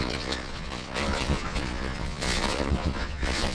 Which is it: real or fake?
fake